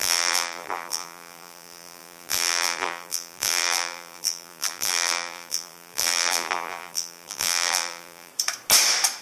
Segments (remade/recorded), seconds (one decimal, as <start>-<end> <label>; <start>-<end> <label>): 0.0-8.3 remade; 8.3-9.2 recorded